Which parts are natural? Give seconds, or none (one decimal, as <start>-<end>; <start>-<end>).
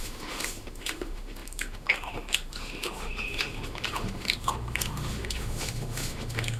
none